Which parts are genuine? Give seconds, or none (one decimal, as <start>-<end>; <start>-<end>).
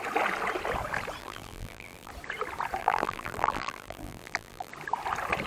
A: 0.0-1.2; 2.1-2.8; 4.7-5.5